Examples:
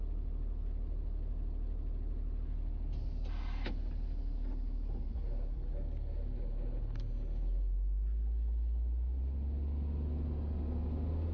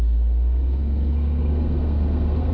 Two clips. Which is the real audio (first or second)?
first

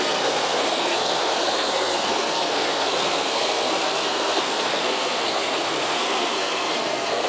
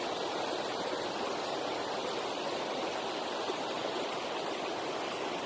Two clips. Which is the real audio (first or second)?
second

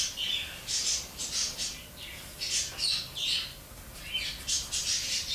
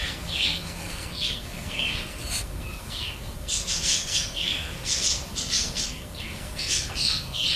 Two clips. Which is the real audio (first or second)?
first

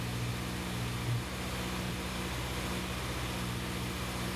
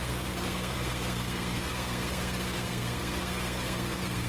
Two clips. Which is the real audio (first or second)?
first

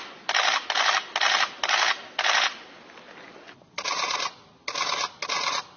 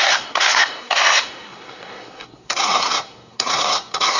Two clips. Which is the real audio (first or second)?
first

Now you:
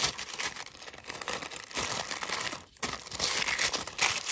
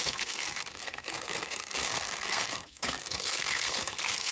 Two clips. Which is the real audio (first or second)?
first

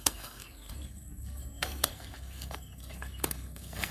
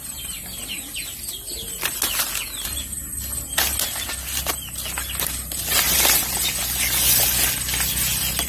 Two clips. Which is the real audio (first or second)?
second